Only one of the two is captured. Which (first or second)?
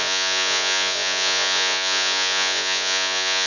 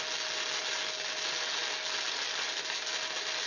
second